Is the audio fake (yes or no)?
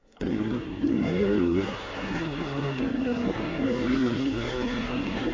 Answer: yes